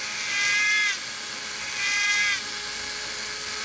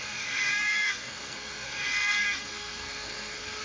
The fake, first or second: second